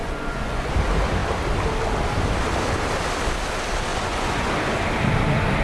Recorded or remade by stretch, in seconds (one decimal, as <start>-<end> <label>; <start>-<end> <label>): 0.0-0.7 remade; 0.7-3.9 recorded; 3.9-4.5 remade; 4.5-5.6 recorded